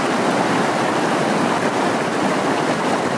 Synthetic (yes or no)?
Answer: no